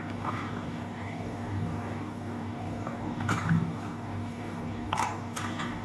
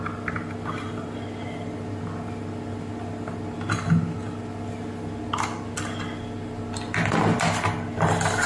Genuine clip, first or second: second